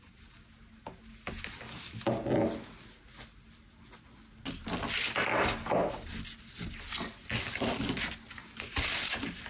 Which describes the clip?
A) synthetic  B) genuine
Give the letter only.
B